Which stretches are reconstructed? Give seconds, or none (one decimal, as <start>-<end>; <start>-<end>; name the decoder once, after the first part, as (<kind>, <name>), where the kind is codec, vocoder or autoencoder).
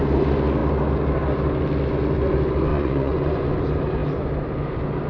2.7-3.5 (vocoder, Vocos)